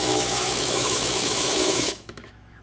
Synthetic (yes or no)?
yes